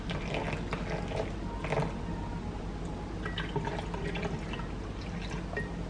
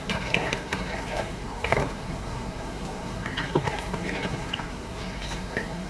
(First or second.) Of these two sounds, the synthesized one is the second